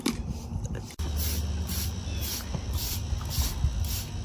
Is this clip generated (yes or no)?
no